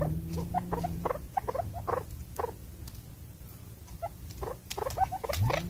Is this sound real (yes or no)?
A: yes